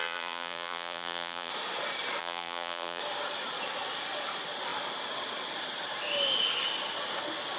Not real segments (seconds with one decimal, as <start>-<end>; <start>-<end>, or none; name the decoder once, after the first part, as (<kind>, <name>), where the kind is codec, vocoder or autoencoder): 0.0-1.5 (vocoder, BigVGAN v2); 2.2-3.0